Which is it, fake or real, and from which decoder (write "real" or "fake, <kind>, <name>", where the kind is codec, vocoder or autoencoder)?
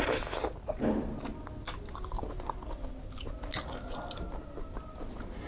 real